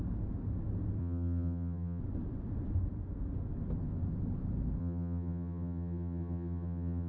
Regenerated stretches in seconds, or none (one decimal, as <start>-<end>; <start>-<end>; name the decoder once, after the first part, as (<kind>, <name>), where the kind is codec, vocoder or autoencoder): 1.0-2.0 (vocoder, HiFi-GAN); 4.8-7.1